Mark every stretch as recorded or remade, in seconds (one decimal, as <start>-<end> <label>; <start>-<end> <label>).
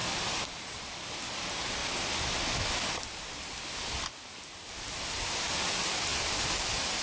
0.0-7.0 recorded